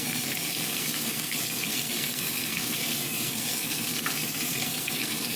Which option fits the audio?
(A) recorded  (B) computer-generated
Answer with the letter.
B